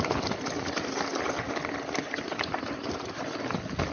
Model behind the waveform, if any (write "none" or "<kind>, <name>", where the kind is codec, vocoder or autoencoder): none